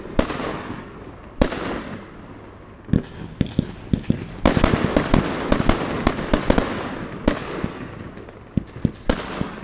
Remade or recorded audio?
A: recorded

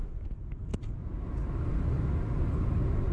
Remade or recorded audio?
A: recorded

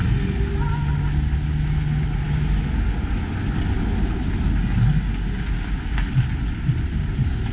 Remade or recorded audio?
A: recorded